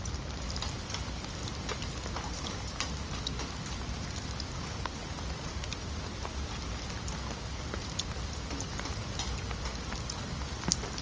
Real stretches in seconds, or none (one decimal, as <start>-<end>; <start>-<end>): 0.0-11.0